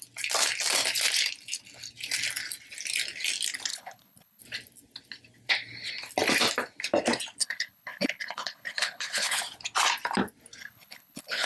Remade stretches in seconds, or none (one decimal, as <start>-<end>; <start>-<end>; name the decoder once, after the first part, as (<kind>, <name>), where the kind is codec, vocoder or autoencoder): 3.7-4.4 (codec, HILCodec); 7.4-9.4; 10.6-11.5